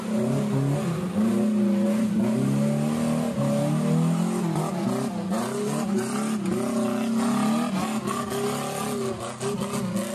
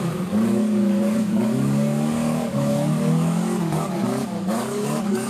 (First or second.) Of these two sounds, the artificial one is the second